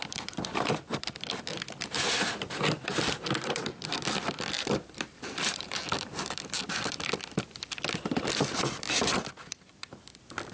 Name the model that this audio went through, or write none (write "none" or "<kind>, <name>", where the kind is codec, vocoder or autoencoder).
vocoder, BigVGAN v2